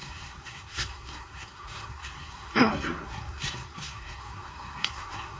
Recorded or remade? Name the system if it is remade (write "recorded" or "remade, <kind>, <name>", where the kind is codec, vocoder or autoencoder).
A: remade, codec, SNAC